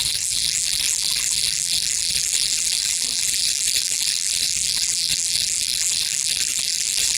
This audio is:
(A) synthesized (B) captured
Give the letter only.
A